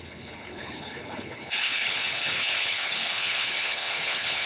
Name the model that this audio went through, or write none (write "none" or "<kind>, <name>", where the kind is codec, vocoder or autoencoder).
codec, HILCodec